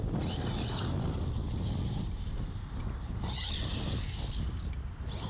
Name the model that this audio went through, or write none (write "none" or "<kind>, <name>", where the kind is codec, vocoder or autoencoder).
none